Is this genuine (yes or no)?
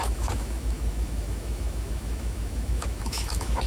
no